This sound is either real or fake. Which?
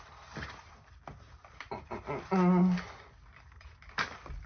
real